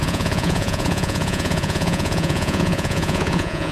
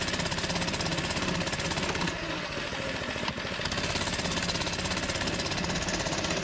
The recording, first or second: second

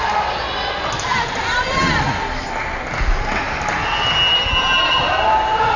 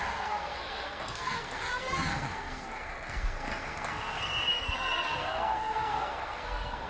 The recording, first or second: first